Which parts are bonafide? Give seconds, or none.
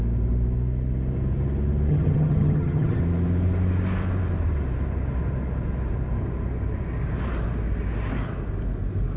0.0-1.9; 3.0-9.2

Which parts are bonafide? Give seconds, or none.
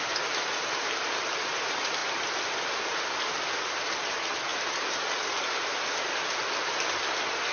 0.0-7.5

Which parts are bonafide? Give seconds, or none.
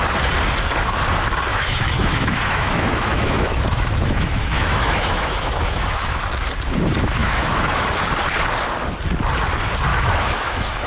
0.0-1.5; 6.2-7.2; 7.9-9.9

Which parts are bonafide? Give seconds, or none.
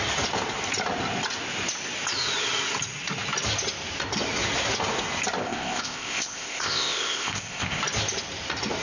0.0-5.4; 7.8-8.8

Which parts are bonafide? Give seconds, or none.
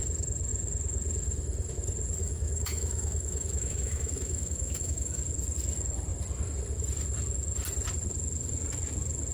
0.0-2.2; 5.2-9.3